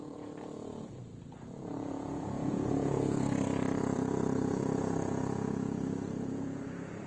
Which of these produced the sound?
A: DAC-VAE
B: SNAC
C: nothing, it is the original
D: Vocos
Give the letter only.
D